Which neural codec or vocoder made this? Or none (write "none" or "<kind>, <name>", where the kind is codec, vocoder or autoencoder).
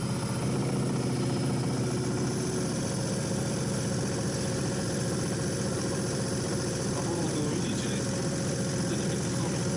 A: vocoder, BigVGAN v2